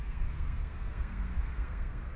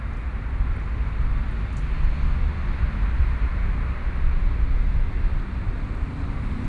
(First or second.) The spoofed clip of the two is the first